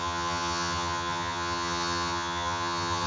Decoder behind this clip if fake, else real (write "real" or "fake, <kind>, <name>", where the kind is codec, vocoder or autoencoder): fake, vocoder, HiFi-GAN